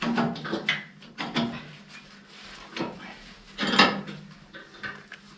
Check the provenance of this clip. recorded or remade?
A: recorded